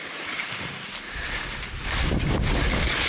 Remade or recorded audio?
recorded